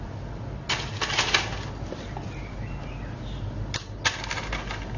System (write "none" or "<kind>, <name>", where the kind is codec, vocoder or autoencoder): none